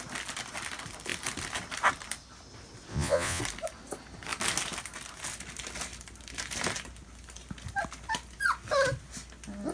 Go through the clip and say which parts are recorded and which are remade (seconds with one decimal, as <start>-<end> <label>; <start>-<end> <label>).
0.0-2.9 recorded; 2.9-3.4 remade; 3.4-9.7 recorded